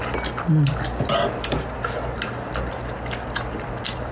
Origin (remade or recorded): recorded